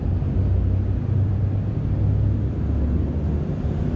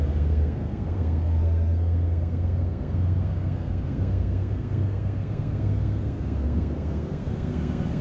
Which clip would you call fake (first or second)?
second